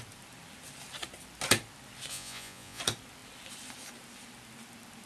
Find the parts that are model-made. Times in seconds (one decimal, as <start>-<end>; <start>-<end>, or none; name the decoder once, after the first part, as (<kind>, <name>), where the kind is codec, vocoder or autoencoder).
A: 2.1-2.8 (vocoder, Vocos)